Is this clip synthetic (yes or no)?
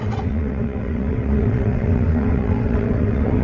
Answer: yes